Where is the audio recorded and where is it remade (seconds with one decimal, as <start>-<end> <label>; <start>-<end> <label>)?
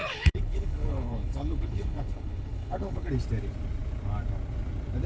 0.0-3.1 remade; 3.1-5.1 recorded